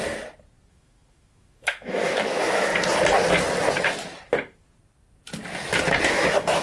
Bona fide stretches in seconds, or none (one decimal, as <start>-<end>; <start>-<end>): 0.0-0.7; 2.7-6.1